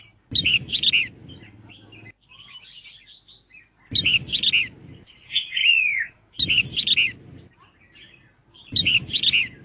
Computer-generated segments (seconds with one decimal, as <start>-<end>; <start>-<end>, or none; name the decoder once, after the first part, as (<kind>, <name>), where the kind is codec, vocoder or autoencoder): 5.6-6.4 (autoencoder, DAC-VAE)